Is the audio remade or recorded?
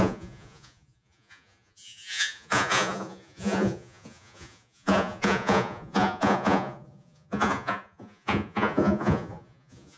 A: remade